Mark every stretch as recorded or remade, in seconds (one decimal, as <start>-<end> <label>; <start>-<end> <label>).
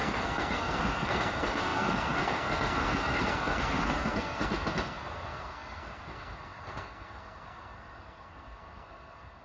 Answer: 0.0-9.4 remade